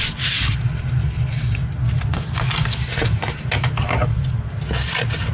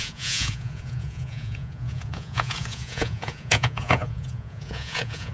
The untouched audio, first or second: first